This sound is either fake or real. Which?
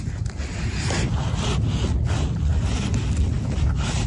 real